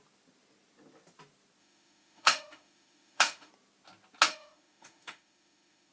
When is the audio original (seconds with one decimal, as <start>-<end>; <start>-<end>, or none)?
0.0-1.6; 3.5-4.3